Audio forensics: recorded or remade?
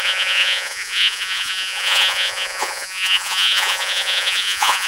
remade